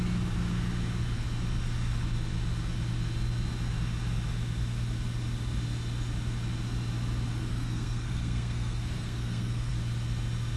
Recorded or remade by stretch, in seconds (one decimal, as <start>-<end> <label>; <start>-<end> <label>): 0.0-7.5 recorded; 7.5-9.7 remade; 9.7-10.6 recorded